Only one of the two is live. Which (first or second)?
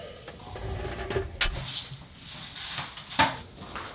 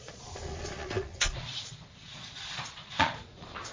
first